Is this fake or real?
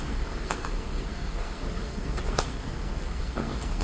fake